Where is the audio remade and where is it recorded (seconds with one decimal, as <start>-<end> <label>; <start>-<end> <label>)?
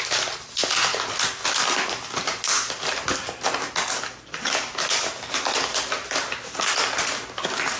0.0-7.8 recorded